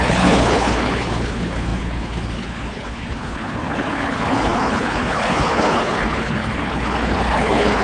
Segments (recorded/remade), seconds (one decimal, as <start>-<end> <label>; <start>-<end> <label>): 0.0-7.8 remade